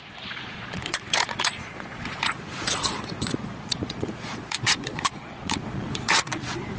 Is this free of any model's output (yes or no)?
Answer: no